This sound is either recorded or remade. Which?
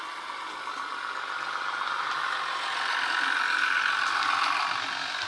recorded